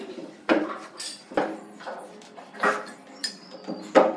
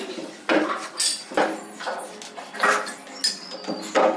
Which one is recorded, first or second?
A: second